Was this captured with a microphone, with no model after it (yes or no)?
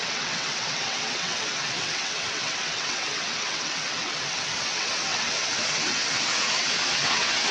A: no